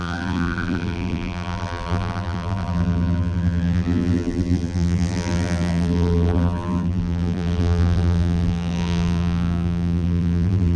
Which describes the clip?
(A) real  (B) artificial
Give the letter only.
B